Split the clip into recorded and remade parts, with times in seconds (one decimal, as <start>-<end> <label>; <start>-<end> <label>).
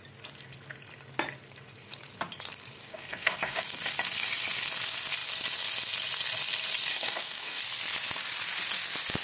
0.0-2.8 recorded; 2.8-3.6 remade; 3.6-6.9 recorded; 6.9-7.6 remade; 7.6-9.2 recorded